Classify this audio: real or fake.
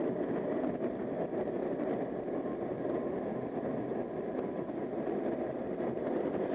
real